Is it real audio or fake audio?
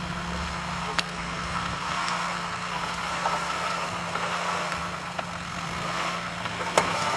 fake